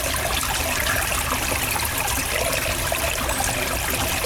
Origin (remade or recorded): recorded